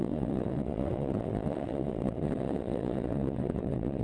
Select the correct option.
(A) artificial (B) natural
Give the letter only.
A